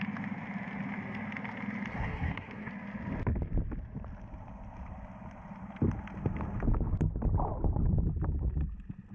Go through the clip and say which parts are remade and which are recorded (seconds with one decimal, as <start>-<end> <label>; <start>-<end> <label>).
0.0-1.9 recorded; 1.9-2.7 remade; 2.7-9.1 recorded